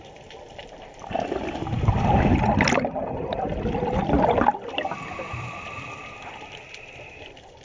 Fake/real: fake